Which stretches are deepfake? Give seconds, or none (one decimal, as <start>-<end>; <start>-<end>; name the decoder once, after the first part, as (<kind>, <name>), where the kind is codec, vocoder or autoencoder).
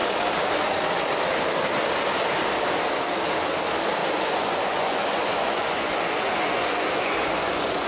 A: 4.0-7.9 (vocoder, Vocos)